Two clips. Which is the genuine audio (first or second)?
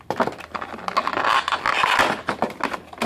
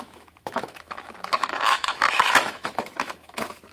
first